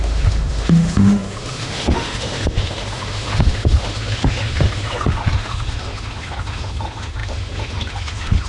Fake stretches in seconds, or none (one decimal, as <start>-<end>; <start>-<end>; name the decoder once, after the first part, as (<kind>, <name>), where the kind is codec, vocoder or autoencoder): 0.0-8.5 (autoencoder, DAC-VAE)